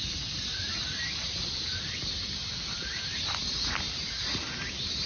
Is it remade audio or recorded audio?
recorded